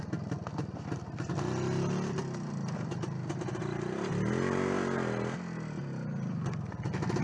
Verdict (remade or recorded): recorded